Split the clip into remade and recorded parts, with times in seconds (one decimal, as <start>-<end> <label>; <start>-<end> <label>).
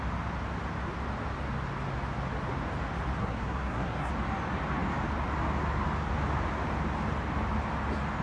0.0-3.2 recorded; 3.2-4.1 remade; 4.1-8.2 recorded